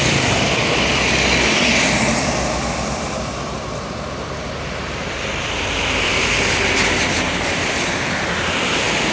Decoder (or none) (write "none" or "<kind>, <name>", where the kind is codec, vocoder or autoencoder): vocoder, BigVGAN v2